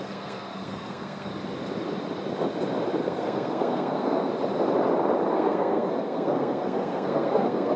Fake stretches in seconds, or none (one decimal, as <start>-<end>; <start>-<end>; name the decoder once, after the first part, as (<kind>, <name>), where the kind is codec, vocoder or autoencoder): 0.0-1.3 (codec, SNAC); 3.0-4.3; 5.3-7.8